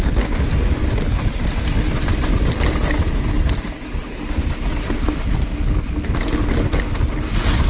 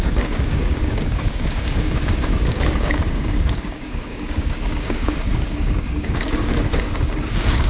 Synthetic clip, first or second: second